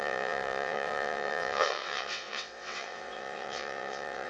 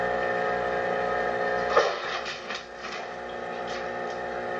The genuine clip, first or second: second